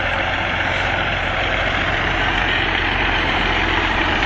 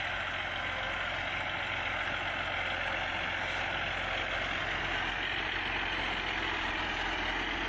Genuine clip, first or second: second